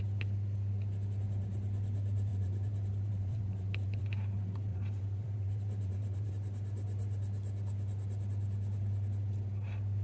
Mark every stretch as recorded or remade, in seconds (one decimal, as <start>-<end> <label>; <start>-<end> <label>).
0.0-2.3 recorded; 2.3-4.0 remade; 4.0-4.7 recorded; 4.7-6.3 remade; 6.3-10.0 recorded